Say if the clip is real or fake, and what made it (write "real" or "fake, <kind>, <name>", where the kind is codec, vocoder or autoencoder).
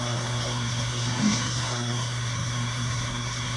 fake, codec, SNAC